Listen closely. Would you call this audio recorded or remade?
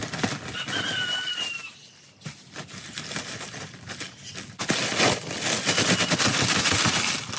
recorded